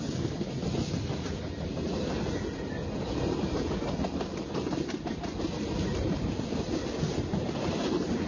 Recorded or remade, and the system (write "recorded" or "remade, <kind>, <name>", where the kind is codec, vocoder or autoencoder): recorded